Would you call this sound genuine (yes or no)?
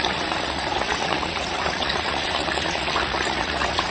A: no